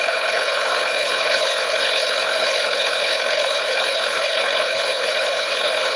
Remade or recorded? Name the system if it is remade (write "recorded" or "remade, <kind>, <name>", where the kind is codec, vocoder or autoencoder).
remade, codec, HILCodec